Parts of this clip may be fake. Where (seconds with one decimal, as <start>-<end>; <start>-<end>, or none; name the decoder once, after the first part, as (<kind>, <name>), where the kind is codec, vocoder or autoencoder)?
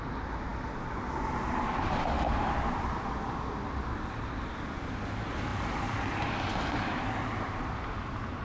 0.0-8.4 (vocoder, BigVGAN v2)